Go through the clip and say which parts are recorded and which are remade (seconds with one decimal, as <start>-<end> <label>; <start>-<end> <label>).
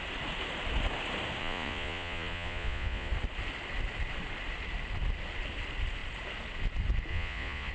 0.0-1.4 recorded; 1.4-3.1 remade; 3.1-7.1 recorded; 7.1-7.7 remade